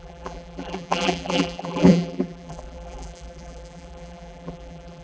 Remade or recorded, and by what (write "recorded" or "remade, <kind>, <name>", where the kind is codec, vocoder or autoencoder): remade, vocoder, BigVGAN v2